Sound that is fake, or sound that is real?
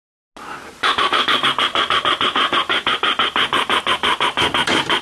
real